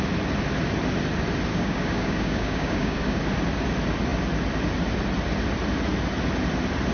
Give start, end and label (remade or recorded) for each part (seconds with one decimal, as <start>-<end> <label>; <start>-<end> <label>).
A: 0.0-1.5 recorded; 1.5-3.2 remade; 3.2-6.9 recorded